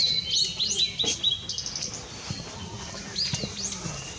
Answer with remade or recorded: recorded